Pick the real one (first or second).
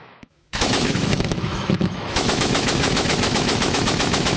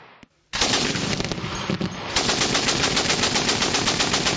second